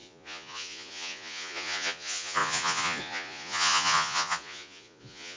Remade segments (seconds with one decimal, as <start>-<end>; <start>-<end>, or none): 0.0-5.4